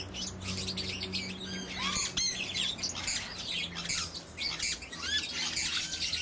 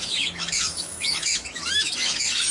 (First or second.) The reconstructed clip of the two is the second